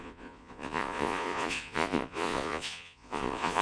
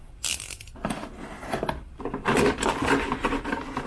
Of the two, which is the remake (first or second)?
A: first